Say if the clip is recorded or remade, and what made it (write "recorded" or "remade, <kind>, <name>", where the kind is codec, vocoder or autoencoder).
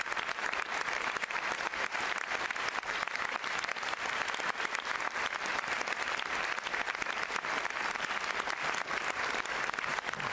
remade, vocoder, BigVGAN v2